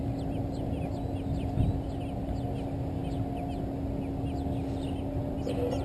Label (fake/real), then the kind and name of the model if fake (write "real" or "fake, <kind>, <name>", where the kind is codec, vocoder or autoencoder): real